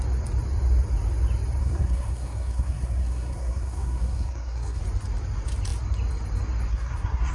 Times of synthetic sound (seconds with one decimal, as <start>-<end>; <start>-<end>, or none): 1.6-4.8; 6.7-7.3